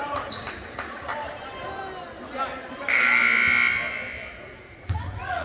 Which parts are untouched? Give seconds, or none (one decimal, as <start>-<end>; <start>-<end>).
1.1-4.3

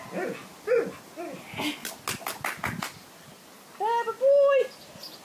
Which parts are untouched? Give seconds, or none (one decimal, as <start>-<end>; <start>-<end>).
0.0-5.2